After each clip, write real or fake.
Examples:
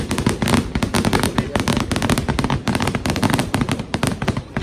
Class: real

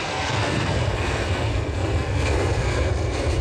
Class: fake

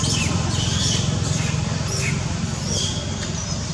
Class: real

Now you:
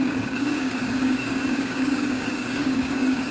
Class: fake